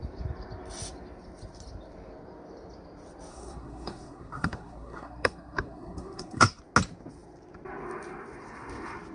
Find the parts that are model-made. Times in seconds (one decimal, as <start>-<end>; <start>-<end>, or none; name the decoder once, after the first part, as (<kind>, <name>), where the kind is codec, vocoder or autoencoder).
3.3-6.6 (codec, SNAC)

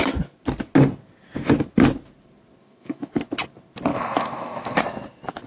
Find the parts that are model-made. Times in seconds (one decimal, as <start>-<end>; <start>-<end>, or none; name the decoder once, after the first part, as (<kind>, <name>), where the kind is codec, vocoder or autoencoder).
2.6-3.2 (autoencoder, DAC-VAE); 3.9-4.8